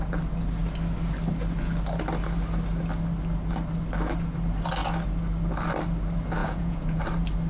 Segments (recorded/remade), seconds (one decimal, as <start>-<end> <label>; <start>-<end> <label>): 0.0-6.4 recorded; 6.4-7.0 remade; 7.0-7.5 recorded